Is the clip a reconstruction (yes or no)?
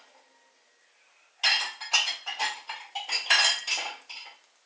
no